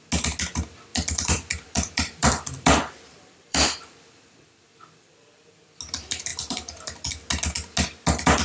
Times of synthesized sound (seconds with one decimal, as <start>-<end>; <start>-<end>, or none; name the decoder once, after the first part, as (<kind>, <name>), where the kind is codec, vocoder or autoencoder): 0.9-5.8 (vocoder, BigVGAN v2); 6.3-7.1